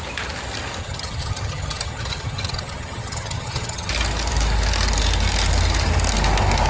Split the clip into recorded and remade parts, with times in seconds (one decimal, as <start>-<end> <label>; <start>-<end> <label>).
0.0-0.8 recorded; 0.8-3.9 remade; 3.9-6.7 recorded

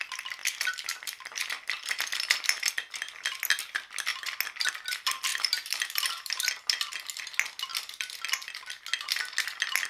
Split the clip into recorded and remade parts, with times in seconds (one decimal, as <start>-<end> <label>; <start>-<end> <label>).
0.0-5.3 recorded; 5.3-6.6 remade; 6.6-9.9 recorded